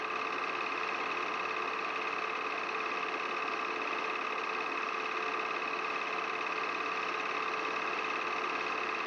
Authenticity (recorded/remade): recorded